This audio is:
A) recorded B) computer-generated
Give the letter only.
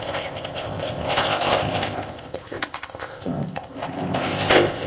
B